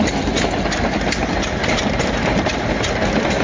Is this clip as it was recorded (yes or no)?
yes